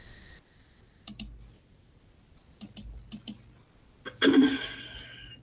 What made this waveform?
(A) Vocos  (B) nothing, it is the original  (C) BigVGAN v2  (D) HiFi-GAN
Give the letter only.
B